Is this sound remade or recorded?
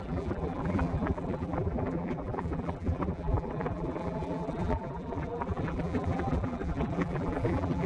remade